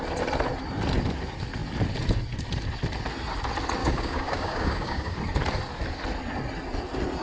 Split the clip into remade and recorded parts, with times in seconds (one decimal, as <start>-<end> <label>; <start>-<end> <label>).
0.0-3.8 recorded; 3.8-5.2 remade; 5.2-7.2 recorded